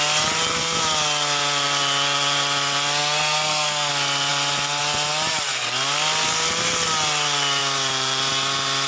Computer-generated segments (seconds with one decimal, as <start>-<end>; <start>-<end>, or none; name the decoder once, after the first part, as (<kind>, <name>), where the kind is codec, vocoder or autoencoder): 3.0-3.9 (codec, SNAC)